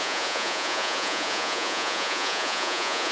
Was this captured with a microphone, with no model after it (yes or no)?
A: no